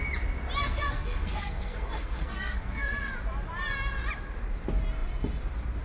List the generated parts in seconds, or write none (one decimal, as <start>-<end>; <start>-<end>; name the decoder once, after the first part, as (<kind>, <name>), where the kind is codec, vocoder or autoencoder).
0.6-3.1 (codec, SNAC)